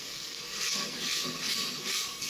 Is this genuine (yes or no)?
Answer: no